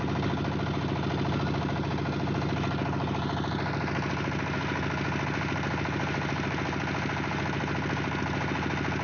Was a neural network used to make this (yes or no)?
no